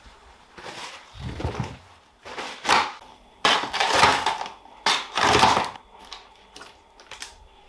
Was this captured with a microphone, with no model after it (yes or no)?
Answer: yes